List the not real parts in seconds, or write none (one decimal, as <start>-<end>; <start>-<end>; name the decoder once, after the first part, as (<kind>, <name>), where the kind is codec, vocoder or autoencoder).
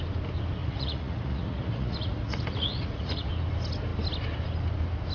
0.6-3.3 (vocoder, Vocos)